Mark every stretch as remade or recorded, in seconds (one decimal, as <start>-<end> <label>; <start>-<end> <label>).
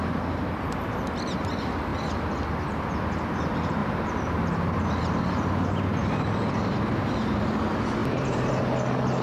0.0-3.8 recorded; 3.8-5.4 remade; 5.4-6.0 recorded; 6.0-7.2 remade; 7.2-8.0 recorded; 8.0-8.5 remade; 8.5-9.2 recorded